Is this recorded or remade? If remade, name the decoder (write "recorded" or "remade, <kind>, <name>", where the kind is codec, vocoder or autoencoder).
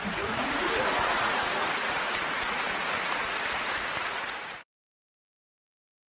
remade, vocoder, Vocos